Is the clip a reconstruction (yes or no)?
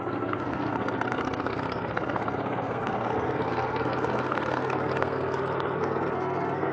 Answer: yes